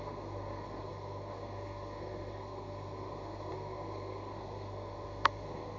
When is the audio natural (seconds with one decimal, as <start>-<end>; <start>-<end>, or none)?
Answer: none